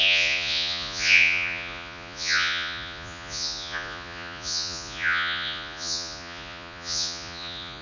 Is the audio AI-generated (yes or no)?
yes